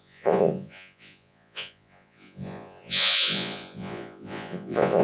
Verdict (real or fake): fake